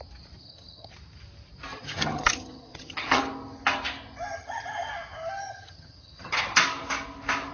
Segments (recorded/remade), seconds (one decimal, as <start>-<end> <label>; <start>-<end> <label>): 0.0-0.4 recorded; 0.4-0.9 remade; 0.9-1.7 recorded; 1.7-3.2 remade; 3.2-4.3 recorded; 4.3-4.9 remade; 4.9-5.4 recorded; 5.4-6.4 remade; 6.4-7.5 recorded